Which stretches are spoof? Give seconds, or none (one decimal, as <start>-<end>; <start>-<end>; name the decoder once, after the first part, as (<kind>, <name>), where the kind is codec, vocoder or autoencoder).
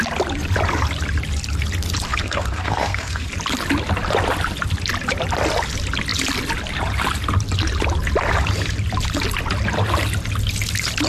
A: 2.1-3.3 (codec, SNAC)